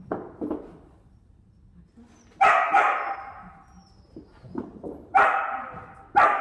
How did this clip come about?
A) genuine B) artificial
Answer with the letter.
A